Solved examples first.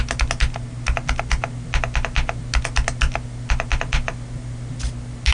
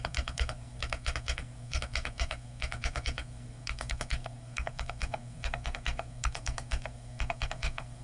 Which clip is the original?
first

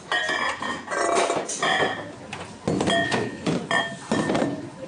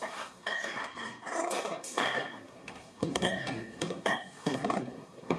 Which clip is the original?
first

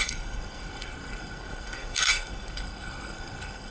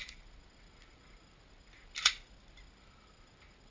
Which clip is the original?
second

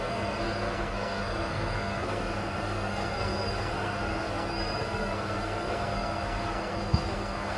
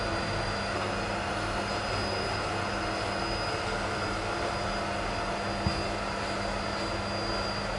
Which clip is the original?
second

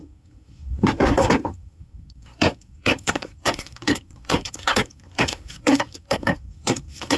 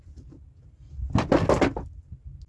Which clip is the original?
second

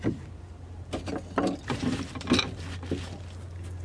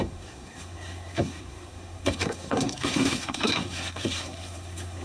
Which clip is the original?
first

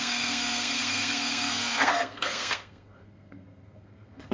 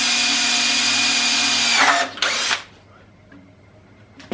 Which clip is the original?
second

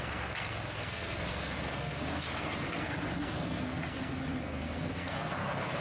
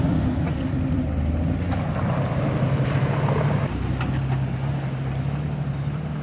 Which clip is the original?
second